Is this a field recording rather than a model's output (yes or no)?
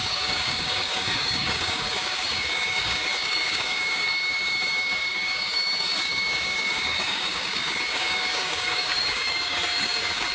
no